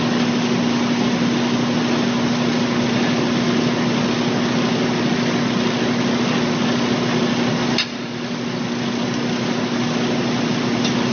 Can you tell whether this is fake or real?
real